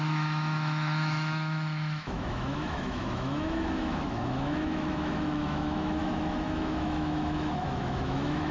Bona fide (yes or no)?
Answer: no